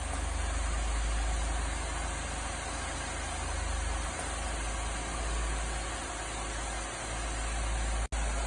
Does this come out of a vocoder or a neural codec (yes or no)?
no